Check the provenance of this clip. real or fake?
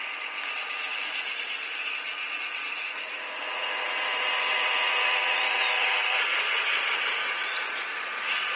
fake